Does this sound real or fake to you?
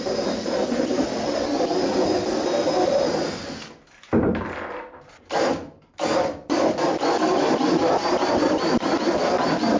real